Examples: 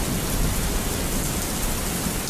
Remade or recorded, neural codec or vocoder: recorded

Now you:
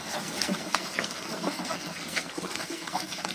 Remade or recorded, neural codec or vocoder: remade, codec, SNAC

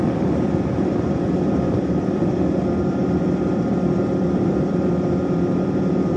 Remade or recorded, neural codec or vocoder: remade, vocoder, BigVGAN v2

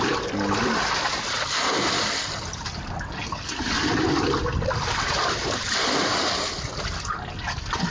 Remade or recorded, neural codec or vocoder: recorded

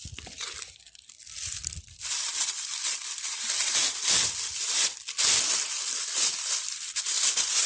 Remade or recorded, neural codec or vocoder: remade, vocoder, BigVGAN v2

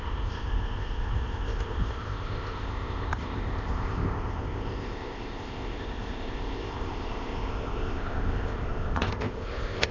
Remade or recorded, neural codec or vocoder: remade, codec, ZipCodec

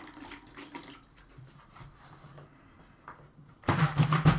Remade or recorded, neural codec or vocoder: recorded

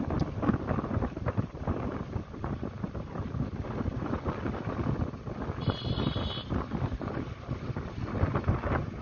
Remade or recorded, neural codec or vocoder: remade, vocoder, BigVGAN v2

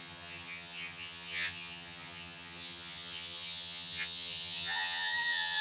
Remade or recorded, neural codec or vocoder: remade, vocoder, HiFi-GAN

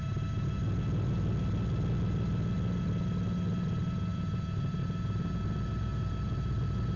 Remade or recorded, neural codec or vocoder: recorded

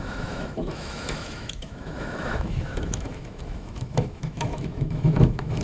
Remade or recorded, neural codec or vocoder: remade, autoencoder, DAC-VAE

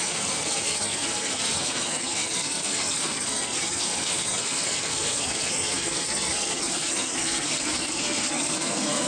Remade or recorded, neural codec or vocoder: remade, codec, SNAC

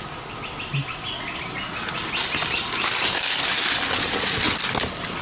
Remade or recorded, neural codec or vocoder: recorded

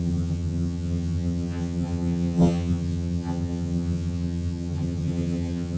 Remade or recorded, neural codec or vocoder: remade, vocoder, HiFi-GAN